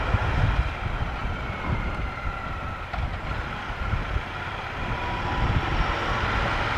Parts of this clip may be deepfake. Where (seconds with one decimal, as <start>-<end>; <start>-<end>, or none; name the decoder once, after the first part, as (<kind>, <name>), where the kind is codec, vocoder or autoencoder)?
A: 1.2-3.1 (vocoder, BigVGAN v2)